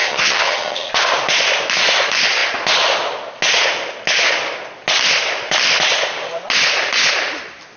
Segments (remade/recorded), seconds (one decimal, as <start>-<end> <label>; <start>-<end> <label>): 0.0-0.9 remade; 0.9-7.8 recorded